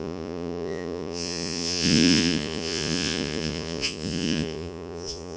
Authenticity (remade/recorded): remade